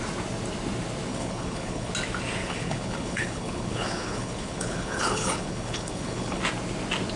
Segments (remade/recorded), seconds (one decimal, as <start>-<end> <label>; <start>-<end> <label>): 0.0-1.1 recorded; 1.1-1.9 remade; 1.9-2.4 recorded; 2.4-6.4 remade; 6.4-7.2 recorded